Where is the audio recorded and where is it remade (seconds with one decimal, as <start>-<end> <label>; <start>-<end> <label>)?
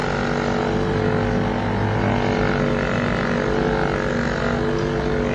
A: 0.0-5.3 recorded